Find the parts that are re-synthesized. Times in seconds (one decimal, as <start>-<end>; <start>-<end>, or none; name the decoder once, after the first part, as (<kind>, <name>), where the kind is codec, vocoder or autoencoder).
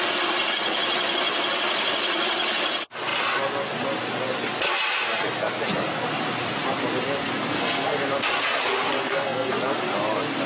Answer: 7.5-8.0 (codec, SNAC); 9.0-9.5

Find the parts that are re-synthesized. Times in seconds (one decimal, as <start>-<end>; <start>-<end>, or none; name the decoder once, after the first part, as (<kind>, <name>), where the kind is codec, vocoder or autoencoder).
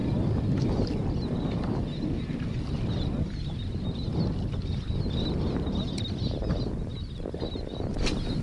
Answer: none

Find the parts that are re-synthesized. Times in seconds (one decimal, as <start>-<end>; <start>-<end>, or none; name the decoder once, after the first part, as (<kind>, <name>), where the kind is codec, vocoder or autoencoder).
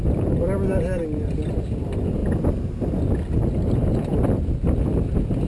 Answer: none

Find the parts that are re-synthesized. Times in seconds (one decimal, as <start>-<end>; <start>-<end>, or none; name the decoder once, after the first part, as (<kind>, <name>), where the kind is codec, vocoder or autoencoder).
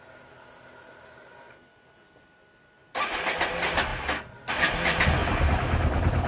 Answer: 2.8-3.3 (vocoder, BigVGAN v2); 5.2-6.3